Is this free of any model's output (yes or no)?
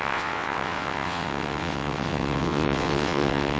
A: no